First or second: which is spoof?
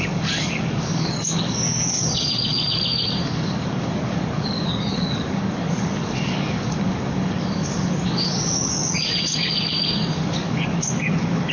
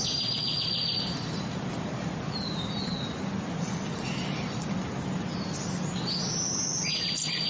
first